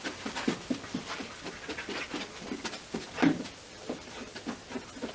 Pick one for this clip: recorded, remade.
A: recorded